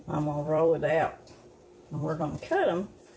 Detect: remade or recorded remade